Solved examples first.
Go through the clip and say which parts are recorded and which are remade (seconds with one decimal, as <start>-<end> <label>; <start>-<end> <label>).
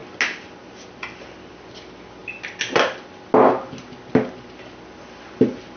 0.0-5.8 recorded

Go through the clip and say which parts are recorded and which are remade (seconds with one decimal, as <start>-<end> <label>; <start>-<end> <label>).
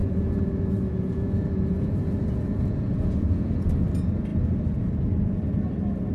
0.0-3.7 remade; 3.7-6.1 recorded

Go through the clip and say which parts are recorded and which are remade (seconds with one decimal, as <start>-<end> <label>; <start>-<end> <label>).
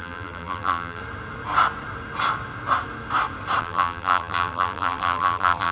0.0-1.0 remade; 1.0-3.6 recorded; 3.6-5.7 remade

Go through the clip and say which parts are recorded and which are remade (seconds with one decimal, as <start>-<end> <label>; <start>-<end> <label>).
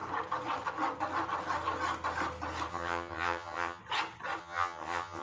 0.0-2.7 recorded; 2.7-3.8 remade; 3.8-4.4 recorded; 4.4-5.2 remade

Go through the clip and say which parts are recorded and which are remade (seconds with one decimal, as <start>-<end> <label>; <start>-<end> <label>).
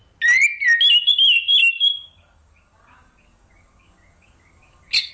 0.0-1.6 recorded; 1.6-5.1 remade